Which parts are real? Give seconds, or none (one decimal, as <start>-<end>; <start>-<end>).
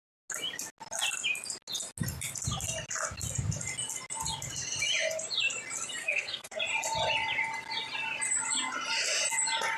0.0-6.0; 6.6-9.8